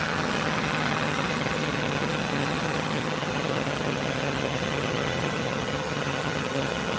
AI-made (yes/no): yes